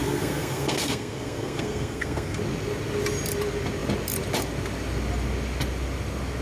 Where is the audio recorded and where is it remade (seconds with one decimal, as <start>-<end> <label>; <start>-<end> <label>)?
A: 0.0-2.4 remade; 2.4-6.4 recorded